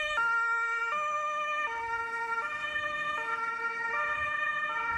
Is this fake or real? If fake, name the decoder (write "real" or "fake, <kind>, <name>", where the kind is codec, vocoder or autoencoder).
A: fake, autoencoder, DAC-VAE